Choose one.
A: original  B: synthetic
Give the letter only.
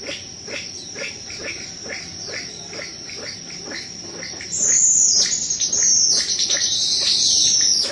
A